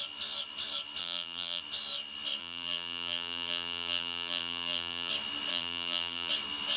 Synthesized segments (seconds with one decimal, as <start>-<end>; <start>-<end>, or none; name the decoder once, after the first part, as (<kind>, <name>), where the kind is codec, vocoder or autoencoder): 1.0-1.6 (vocoder, BigVGAN v2); 2.4-5.1; 5.5-6.3